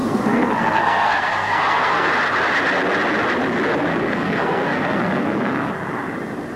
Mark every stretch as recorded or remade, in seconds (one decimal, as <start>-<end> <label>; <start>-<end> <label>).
0.0-2.1 remade; 2.1-3.9 recorded; 3.9-5.7 remade; 5.7-6.6 recorded